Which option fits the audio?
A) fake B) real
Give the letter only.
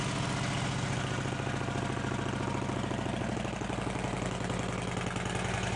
B